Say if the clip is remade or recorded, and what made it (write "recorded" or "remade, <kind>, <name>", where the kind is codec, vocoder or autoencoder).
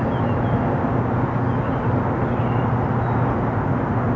recorded